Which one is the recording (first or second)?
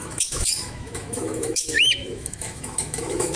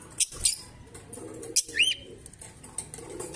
second